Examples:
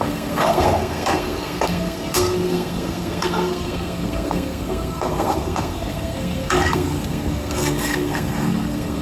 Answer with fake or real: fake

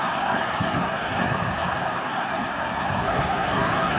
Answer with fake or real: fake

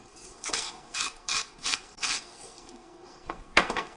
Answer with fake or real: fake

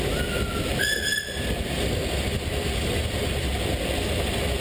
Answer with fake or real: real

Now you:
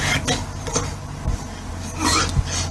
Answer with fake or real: real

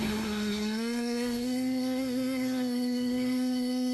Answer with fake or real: fake